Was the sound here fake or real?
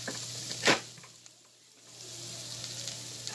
real